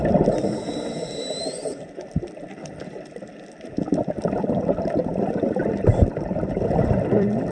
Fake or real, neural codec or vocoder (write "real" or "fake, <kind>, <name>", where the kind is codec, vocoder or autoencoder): fake, vocoder, BigVGAN v2